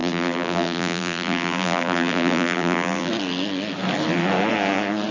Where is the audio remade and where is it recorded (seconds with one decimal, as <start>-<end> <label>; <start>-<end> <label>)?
0.0-3.1 remade; 3.1-5.1 recorded

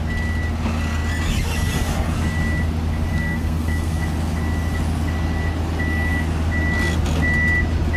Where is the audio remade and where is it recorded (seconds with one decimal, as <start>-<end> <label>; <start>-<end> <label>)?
0.0-3.1 recorded; 3.1-4.0 remade; 4.0-8.0 recorded